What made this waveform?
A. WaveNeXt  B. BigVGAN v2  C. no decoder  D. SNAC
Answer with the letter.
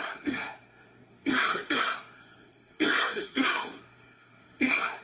D